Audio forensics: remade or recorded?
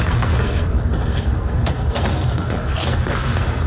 remade